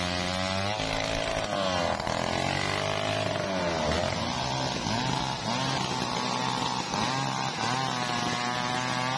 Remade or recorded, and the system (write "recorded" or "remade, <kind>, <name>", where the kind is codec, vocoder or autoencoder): recorded